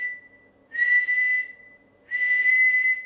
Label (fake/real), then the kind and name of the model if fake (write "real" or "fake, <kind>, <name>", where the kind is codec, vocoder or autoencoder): real